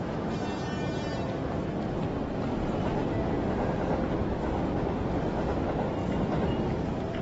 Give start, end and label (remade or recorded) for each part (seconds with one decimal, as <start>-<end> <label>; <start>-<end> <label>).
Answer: 0.0-6.0 recorded; 6.0-7.2 remade